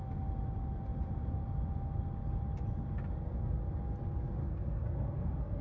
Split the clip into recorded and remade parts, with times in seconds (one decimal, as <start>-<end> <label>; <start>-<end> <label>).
0.0-4.4 recorded; 4.4-5.6 remade